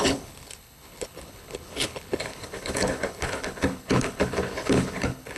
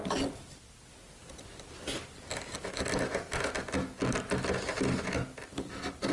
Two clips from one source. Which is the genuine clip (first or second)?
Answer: second